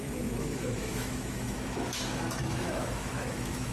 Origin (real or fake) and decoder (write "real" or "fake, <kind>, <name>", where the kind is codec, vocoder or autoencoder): fake, autoencoder, DAC-VAE